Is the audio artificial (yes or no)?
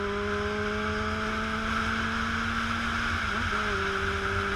no